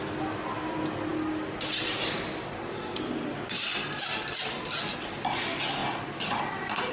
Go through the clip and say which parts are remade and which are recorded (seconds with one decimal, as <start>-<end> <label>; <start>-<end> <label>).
0.0-6.9 recorded